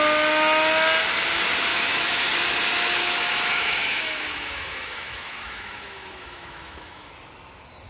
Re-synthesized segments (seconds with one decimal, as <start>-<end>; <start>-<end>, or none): 1.7-2.3; 3.0-7.1